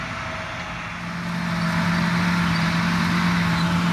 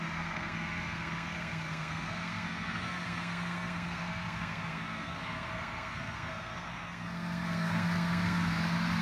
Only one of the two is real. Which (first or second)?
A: first